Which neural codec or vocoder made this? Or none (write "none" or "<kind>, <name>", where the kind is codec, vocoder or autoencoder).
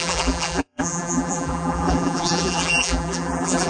vocoder, BigVGAN v2